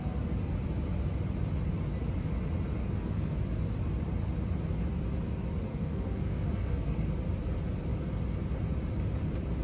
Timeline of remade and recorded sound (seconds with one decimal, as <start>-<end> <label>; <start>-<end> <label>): 0.0-2.8 recorded; 2.8-3.3 remade; 3.3-5.7 recorded; 5.7-7.1 remade; 7.1-9.6 recorded